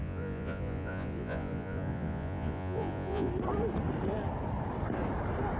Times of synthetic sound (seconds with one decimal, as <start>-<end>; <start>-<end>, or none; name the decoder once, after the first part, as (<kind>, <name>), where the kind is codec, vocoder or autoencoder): 0.0-3.3 (vocoder, Vocos)